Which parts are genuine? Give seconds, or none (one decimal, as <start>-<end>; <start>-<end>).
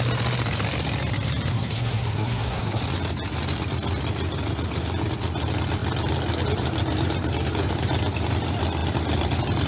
0.0-1.5; 2.8-9.7